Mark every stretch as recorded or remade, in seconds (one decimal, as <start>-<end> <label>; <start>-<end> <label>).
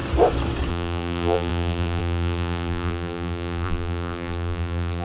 0.0-0.7 recorded; 0.7-5.0 remade